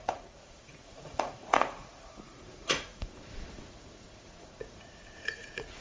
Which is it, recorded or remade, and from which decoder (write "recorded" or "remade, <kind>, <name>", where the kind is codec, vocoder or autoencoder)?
remade, vocoder, Vocos